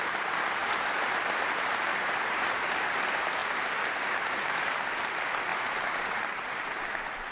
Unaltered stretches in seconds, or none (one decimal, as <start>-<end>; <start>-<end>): 0.0-1.9; 3.0-3.4; 4.8-5.5; 6.6-7.3